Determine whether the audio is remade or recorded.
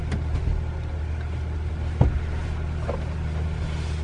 recorded